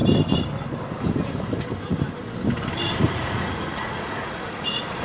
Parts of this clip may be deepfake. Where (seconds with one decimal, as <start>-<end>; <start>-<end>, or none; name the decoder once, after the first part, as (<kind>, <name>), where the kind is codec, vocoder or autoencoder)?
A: 3.0-5.0 (vocoder, Vocos)